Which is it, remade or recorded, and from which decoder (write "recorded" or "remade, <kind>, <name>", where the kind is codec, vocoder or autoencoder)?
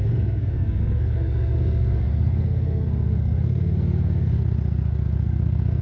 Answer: remade, codec, SNAC